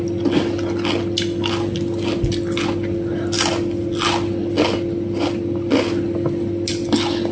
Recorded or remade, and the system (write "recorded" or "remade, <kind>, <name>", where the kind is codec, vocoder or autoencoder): recorded